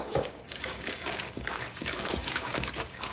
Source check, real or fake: fake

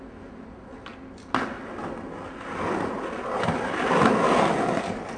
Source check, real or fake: real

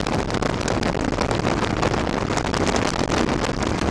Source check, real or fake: real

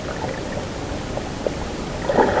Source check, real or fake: real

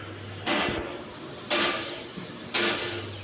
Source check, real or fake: real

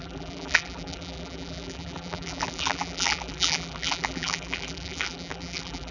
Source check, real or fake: fake